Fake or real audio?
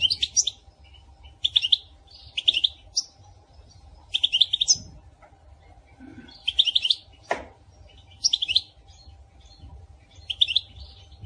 real